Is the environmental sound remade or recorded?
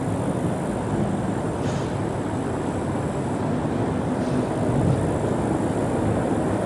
recorded